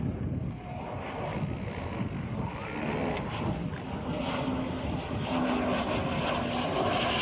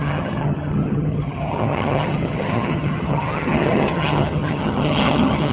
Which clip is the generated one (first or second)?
second